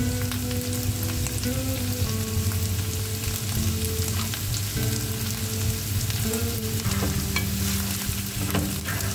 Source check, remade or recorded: recorded